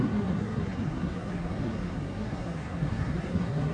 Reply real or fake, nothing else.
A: fake